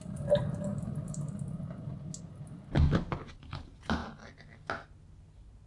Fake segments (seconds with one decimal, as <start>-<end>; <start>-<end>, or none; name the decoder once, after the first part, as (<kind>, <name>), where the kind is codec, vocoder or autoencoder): 0.7-1.9 (vocoder, BigVGAN v2)